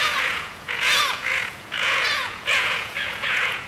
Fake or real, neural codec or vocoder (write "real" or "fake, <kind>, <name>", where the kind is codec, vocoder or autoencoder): fake, vocoder, Vocos